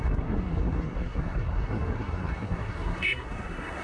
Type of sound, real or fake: fake